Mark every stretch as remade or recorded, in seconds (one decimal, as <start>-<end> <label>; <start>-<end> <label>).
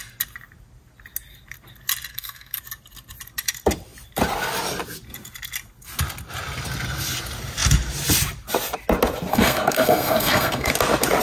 0.0-2.1 recorded; 2.1-2.6 remade; 2.6-9.3 recorded; 9.3-10.7 remade; 10.7-11.2 recorded